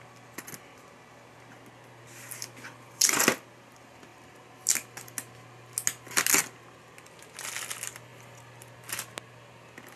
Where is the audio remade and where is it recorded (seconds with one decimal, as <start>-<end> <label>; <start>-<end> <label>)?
0.0-10.0 recorded